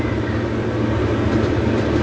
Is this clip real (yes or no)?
yes